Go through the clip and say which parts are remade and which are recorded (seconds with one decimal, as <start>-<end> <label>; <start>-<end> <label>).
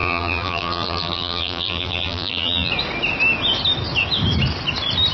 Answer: 0.0-2.7 remade; 2.7-5.1 recorded